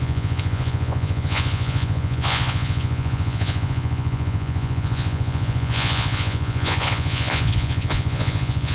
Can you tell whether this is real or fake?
fake